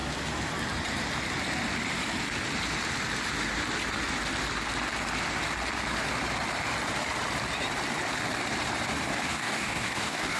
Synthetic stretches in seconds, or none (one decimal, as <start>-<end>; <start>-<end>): 9.1-10.4